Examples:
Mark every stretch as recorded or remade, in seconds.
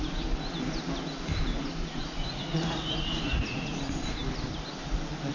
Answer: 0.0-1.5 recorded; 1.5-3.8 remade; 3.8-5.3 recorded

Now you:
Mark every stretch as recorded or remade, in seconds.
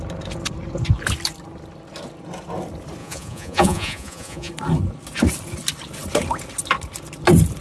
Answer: 0.0-3.0 recorded; 3.0-4.5 remade; 4.5-7.6 recorded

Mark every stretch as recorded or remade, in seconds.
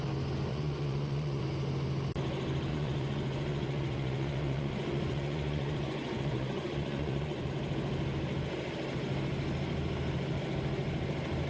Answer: 0.0-0.5 recorded; 0.5-1.4 remade; 1.4-2.7 recorded; 2.7-7.5 remade; 7.5-11.5 recorded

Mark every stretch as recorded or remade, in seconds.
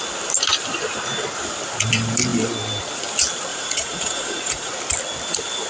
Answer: 0.0-3.5 recorded; 3.5-4.7 remade; 4.7-5.7 recorded